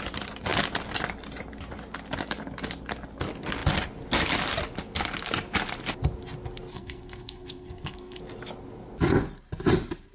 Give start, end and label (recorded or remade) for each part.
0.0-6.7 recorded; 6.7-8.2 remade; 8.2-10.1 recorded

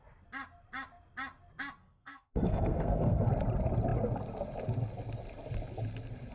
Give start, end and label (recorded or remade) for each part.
0.0-1.8 recorded; 1.8-3.3 remade; 3.3-6.3 recorded

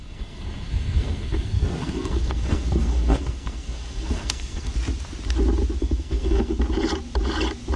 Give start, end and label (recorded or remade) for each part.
0.0-4.7 remade; 4.7-5.8 recorded; 5.8-6.6 remade; 6.6-7.8 recorded

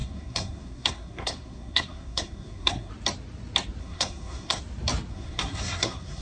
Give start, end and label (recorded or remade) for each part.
0.0-2.9 remade; 2.9-3.8 recorded; 3.8-4.6 remade; 4.6-5.1 recorded; 5.1-6.2 remade

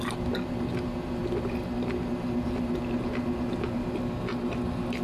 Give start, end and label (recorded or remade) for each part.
0.0-5.0 recorded

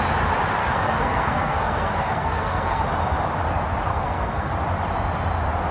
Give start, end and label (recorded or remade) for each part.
0.0-0.6 recorded; 0.6-2.8 remade; 2.8-3.9 recorded; 3.9-4.5 remade; 4.5-5.7 recorded

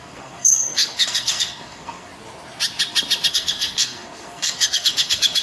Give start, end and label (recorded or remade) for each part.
0.0-2.1 remade; 2.1-3.3 recorded; 3.3-5.4 remade